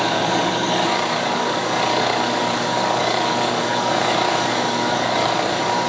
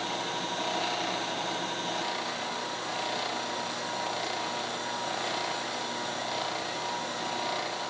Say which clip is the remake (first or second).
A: first